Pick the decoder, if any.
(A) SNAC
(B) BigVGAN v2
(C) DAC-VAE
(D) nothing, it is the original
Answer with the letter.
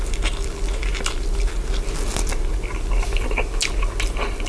D